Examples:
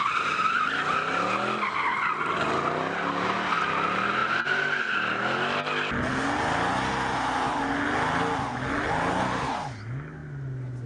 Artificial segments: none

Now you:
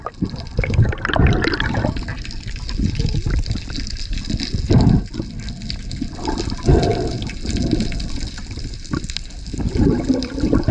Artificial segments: none

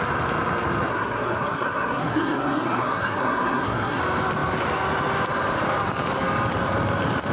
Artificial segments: 0.9-4.0 (codec, SNAC)

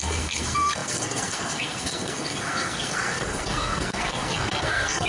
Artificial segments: 0.0-5.1 (codec, SNAC)

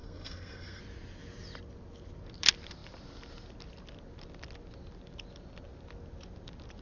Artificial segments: 0.0-0.8 (codec, SNAC)

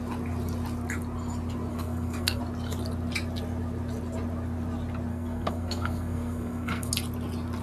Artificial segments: 1.7-2.4 (codec, SNAC); 5.1-6.9

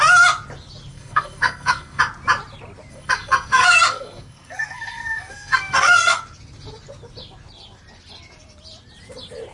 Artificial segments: 0.9-2.0 (codec, SNAC); 2.9-6.2

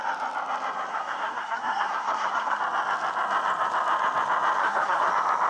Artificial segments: 0.9-2.6 (codec, SNAC); 4.6-5.1